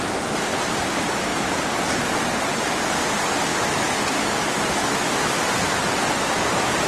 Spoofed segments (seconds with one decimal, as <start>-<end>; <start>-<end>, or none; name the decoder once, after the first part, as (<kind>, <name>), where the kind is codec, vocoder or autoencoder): 3.5-5.5 (autoencoder, DAC-VAE)